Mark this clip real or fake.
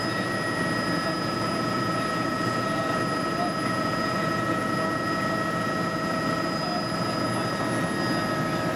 real